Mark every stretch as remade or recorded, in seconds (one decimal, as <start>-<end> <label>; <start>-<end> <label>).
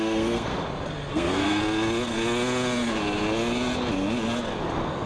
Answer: 0.0-0.5 remade; 0.5-1.1 recorded; 1.1-1.6 remade; 1.6-5.1 recorded